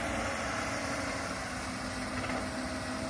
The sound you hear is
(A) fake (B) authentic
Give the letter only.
B